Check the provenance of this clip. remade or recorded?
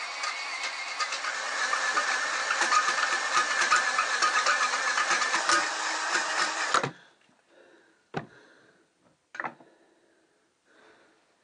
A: recorded